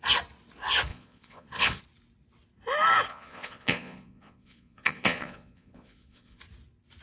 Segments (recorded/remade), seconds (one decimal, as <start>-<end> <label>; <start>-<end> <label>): 0.0-0.9 recorded; 0.9-1.8 remade; 1.8-3.1 recorded; 3.1-6.4 remade; 6.4-7.0 recorded